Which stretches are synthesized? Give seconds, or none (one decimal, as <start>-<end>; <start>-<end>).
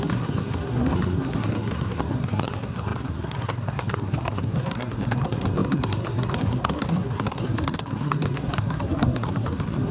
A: 0.0-9.9